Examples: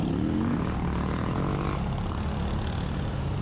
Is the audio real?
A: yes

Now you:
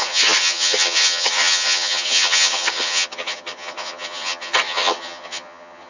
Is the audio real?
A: no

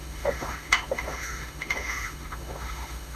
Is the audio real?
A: no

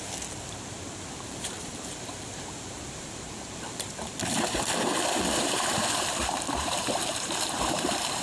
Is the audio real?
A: no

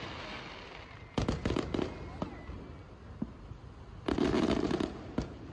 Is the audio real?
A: yes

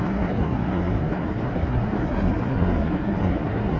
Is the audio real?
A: no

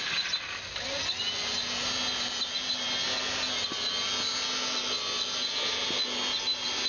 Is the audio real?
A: yes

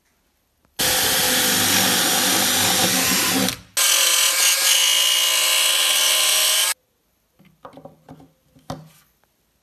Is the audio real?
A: yes